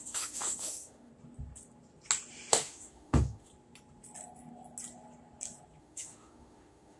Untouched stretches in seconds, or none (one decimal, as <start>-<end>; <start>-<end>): 1.1-2.5; 3.5-5.8

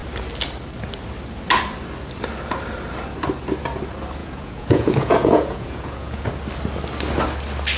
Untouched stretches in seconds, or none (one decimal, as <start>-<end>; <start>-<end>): 0.0-4.2; 6.3-7.8

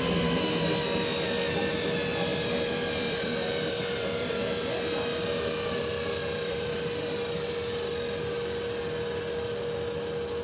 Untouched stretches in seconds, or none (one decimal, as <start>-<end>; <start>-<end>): 0.0-2.3; 4.8-6.2; 7.5-10.4

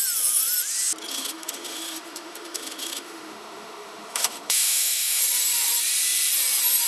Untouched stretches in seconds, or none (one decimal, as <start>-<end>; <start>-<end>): 0.0-1.1; 5.2-6.9

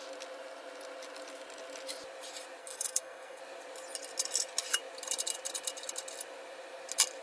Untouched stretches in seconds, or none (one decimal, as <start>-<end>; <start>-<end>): 0.0-2.6; 3.4-7.2

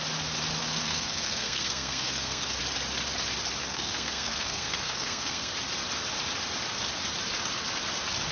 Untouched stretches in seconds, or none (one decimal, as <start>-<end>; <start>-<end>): 0.0-0.6; 2.6-3.6; 5.5-8.3

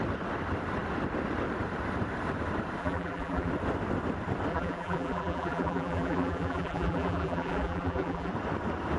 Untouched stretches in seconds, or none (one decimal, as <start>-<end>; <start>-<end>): 0.0-2.8; 3.5-4.5; 8.3-9.0

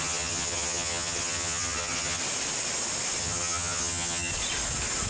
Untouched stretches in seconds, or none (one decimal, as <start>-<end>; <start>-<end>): 2.2-3.2; 4.3-5.1